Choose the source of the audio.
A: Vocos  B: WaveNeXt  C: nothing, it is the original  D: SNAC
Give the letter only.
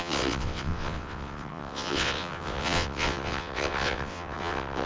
B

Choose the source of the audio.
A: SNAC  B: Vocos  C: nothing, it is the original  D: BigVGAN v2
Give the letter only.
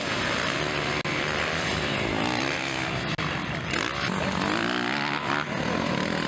C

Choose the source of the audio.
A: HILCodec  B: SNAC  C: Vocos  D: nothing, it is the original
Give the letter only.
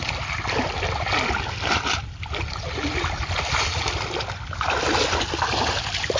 D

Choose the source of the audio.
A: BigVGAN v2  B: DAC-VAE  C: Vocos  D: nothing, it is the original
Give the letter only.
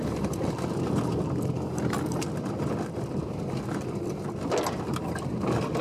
A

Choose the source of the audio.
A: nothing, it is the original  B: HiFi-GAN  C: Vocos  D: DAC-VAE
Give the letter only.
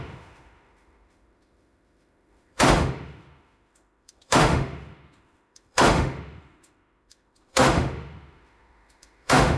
D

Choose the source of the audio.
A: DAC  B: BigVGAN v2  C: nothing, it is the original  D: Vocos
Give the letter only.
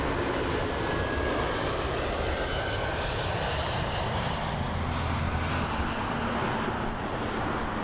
C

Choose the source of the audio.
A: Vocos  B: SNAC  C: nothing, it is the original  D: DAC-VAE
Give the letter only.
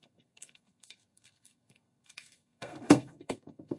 B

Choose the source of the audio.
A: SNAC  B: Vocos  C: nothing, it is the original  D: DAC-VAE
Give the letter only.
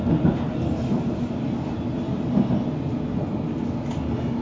C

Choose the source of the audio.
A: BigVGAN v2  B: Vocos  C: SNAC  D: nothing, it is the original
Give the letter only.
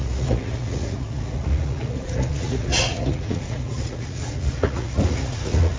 B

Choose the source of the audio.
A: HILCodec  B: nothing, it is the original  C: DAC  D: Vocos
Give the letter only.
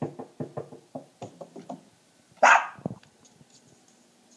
B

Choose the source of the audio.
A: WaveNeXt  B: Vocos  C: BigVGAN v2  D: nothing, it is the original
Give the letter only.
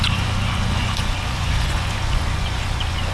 B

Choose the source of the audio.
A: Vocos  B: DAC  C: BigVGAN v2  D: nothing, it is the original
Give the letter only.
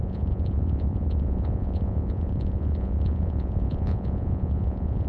A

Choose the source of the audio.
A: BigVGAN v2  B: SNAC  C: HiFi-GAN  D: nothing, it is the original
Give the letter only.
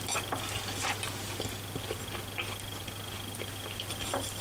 D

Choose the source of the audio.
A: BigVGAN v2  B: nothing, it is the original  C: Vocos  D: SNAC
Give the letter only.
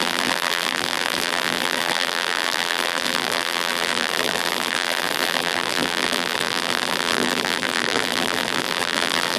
A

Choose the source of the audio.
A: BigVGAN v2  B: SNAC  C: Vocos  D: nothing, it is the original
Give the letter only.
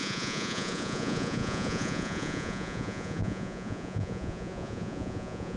C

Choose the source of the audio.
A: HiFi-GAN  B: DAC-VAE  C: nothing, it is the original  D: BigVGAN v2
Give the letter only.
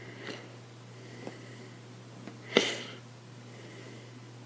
C